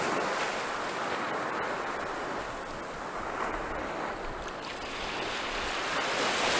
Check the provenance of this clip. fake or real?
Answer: real